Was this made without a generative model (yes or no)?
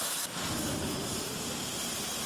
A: yes